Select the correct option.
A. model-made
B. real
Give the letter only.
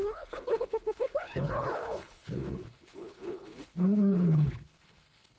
A